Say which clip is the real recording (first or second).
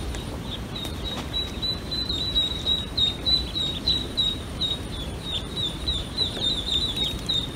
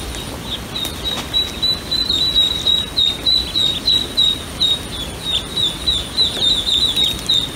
second